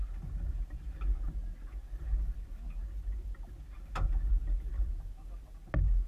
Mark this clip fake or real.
real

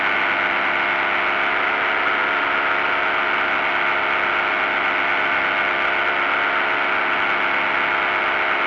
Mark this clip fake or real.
real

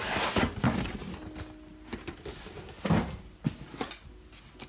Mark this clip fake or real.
real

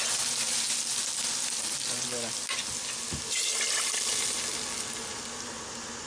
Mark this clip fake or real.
real